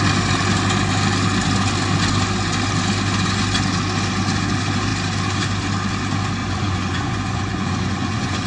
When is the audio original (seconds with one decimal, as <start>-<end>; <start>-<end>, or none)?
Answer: 0.0-6.4